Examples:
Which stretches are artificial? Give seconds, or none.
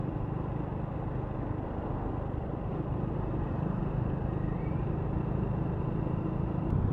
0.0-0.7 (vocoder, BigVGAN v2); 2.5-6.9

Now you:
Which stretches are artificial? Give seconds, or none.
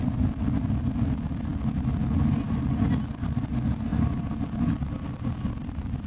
none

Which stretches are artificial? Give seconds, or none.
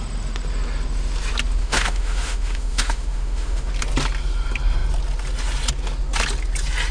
1.6-3.7 (autoencoder, DAC-VAE)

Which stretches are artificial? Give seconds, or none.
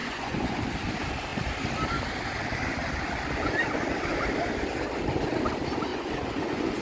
0.0-0.6 (vocoder, Vocos); 5.9-6.8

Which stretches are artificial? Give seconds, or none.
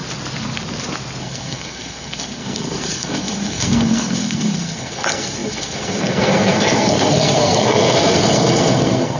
1.2-9.2 (codec, SNAC)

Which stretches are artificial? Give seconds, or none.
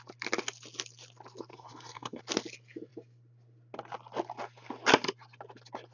1.5-2.2 (codec, SNAC)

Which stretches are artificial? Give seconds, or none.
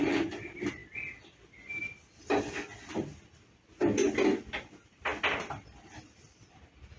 none